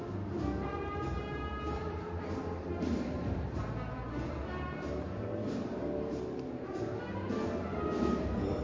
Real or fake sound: fake